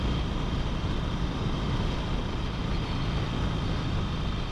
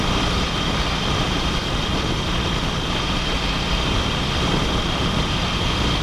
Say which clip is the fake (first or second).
second